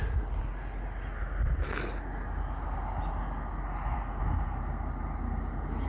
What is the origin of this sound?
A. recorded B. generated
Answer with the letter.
A